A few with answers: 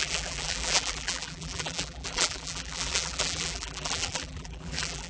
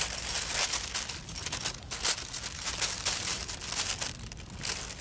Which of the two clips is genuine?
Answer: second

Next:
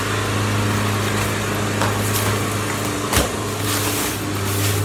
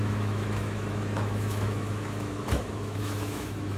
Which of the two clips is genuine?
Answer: first